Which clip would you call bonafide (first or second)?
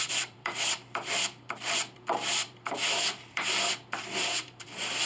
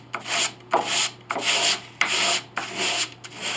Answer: second